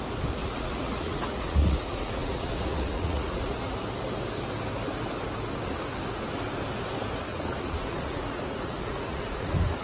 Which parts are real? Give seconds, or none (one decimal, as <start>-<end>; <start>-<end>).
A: 0.0-0.4; 3.8-7.3